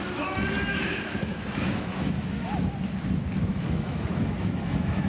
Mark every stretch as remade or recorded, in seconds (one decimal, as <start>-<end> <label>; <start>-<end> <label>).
0.0-0.7 recorded; 0.7-2.5 remade; 2.5-3.5 recorded; 3.5-5.1 remade